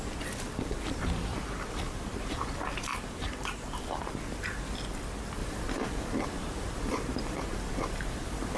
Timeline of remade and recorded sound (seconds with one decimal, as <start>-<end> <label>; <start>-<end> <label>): 0.0-1.3 recorded; 1.3-2.5 remade; 2.5-2.9 recorded; 2.9-4.1 remade; 4.1-5.4 recorded; 5.4-8.6 remade